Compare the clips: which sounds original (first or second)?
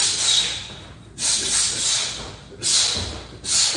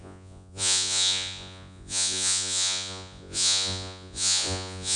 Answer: first